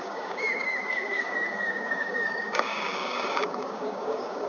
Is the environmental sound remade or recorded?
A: remade